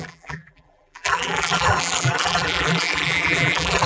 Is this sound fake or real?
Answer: fake